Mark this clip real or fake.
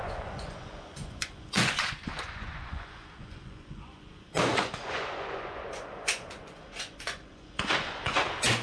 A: fake